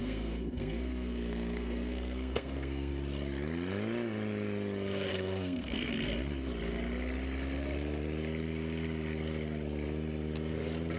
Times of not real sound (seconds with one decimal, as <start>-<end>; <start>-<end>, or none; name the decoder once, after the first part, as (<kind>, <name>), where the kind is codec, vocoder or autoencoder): 0.0-2.9 (codec, SNAC); 5.1-5.9